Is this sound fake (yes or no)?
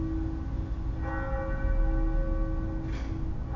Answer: no